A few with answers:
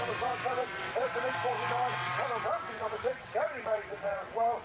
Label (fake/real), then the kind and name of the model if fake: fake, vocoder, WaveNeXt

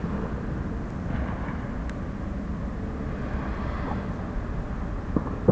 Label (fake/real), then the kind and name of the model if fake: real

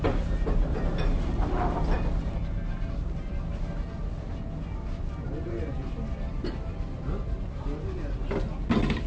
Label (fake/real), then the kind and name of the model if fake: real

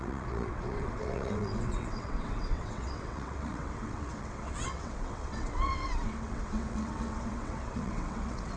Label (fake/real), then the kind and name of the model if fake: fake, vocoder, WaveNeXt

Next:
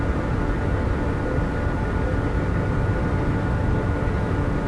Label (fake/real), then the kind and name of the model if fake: real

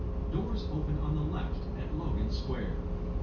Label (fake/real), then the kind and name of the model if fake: real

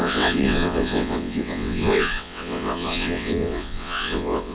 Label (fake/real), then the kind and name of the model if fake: fake, vocoder, WaveNeXt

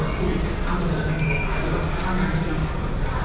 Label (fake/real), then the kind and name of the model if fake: real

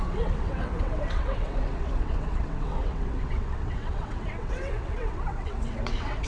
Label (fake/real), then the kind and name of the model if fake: fake, vocoder, WaveNeXt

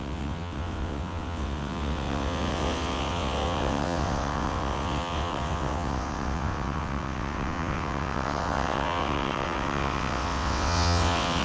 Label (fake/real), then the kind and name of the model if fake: fake, vocoder, WaveNeXt